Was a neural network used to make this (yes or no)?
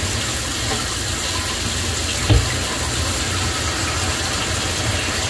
no